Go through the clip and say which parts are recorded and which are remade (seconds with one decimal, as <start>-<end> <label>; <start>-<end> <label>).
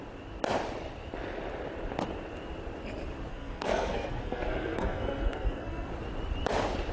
0.0-3.3 recorded; 3.3-5.9 remade; 5.9-6.9 recorded